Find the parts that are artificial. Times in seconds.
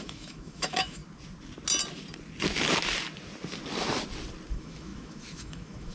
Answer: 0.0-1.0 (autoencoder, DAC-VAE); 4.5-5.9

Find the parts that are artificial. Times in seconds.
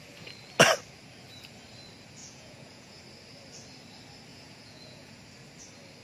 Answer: 2.2-3.0 (vocoder, Vocos); 4.3-5.2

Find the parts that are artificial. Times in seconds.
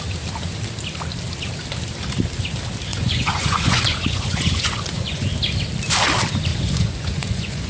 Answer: 2.9-5.3 (vocoder, Vocos); 6.5-7.7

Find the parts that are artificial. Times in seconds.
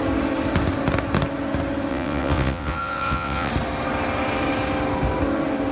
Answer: 1.9-3.5 (vocoder, WaveNeXt)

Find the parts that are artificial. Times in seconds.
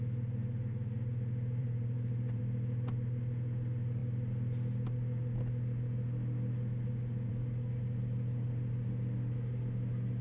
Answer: 1.6-2.4 (vocoder, BigVGAN v2)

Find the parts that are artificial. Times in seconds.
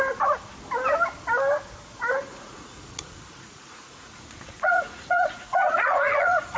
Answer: 2.3-6.6 (vocoder, Vocos)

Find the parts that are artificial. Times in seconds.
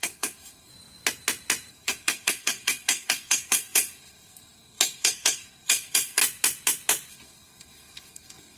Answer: 0.0-0.7 (codec, SNAC); 1.7-6.2; 7.1-8.6